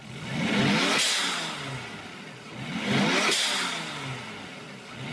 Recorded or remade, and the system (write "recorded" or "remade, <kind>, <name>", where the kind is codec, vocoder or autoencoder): recorded